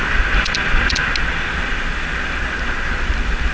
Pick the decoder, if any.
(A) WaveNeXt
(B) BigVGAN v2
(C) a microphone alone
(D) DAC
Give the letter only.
C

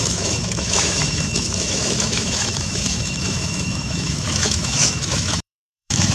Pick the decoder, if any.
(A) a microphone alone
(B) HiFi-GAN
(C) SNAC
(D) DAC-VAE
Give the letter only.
D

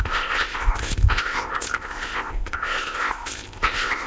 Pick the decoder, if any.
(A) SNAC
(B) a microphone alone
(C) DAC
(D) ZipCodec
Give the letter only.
D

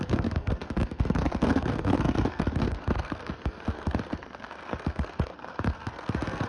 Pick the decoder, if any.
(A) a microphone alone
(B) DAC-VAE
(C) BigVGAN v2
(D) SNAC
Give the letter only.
D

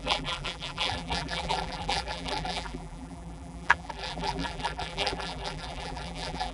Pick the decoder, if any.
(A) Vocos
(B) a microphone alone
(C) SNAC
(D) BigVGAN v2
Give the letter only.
D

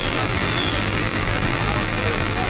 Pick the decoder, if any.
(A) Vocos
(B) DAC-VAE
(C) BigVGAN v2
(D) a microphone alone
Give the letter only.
C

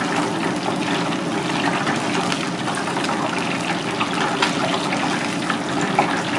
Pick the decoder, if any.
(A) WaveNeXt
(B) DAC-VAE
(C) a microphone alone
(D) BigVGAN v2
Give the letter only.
C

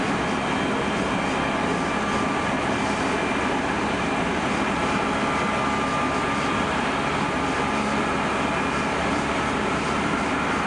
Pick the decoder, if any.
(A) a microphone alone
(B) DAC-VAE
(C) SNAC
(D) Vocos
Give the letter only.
A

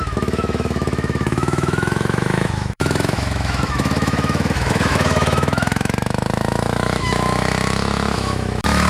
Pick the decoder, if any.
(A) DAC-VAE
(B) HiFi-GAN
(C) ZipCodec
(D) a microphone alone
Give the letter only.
A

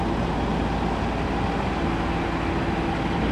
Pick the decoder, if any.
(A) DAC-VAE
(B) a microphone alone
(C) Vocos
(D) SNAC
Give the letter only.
B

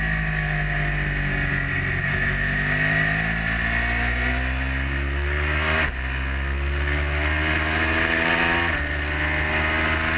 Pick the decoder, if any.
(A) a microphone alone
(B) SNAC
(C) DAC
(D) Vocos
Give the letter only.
A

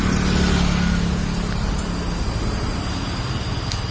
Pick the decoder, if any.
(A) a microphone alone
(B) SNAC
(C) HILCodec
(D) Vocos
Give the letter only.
A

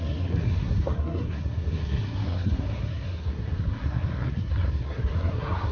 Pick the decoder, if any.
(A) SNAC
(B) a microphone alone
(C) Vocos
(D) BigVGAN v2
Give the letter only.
A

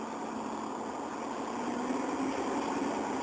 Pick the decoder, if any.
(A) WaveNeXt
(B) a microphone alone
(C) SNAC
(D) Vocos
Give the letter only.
B